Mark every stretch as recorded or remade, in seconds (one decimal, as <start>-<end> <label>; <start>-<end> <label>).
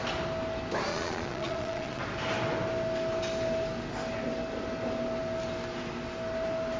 0.0-0.9 recorded; 0.9-2.0 remade; 2.0-6.8 recorded